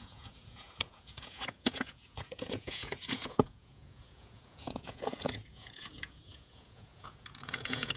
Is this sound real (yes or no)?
no